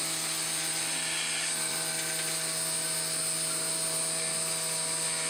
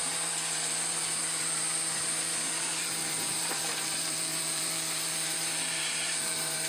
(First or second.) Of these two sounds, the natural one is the first